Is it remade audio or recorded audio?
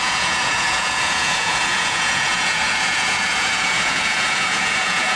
remade